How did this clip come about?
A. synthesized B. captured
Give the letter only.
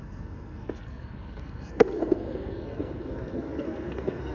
A